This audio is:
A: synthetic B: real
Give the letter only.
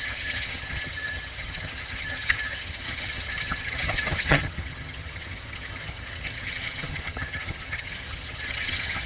A